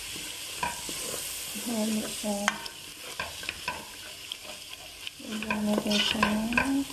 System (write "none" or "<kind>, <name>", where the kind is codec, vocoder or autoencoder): none